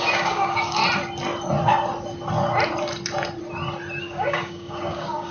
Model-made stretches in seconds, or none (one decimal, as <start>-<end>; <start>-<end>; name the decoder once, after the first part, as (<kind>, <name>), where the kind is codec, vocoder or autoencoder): 0.0-0.8 (codec, DAC); 4.0-5.3